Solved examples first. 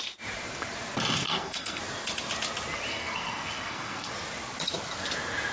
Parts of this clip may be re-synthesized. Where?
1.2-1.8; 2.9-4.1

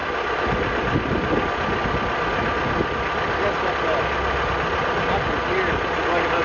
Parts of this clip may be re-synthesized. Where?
none

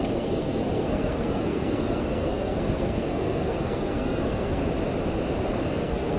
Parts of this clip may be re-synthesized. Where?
0.0-4.6; 5.6-6.2